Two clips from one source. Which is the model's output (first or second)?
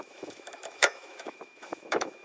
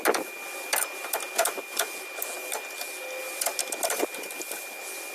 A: first